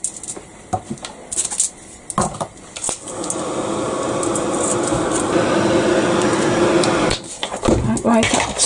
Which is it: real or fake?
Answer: real